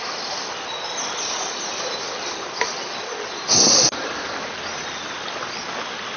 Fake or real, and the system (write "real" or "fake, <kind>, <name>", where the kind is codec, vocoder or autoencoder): real